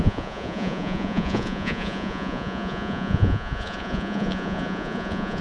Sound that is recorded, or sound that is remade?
remade